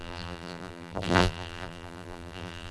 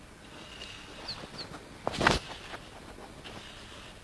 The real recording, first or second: second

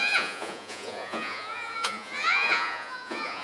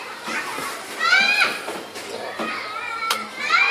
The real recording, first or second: second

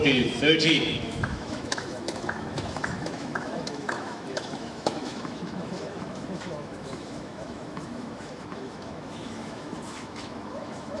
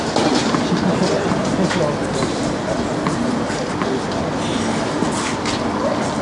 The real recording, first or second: second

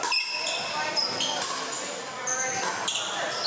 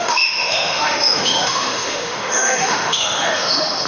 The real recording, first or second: first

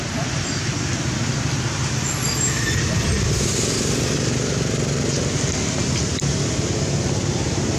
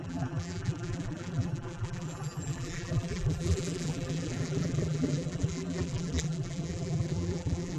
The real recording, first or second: first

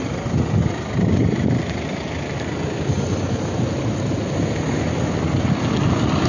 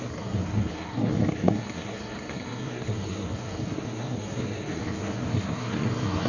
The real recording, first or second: first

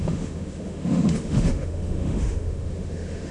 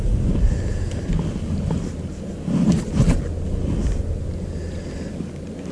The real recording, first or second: second